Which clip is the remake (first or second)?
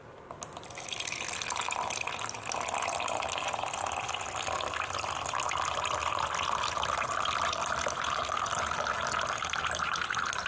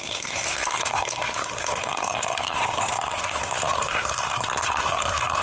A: second